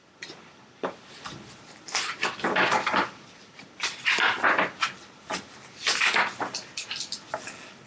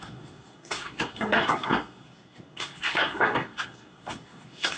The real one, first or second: first